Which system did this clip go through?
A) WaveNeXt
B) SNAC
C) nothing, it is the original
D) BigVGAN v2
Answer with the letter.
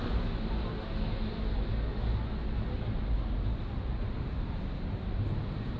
C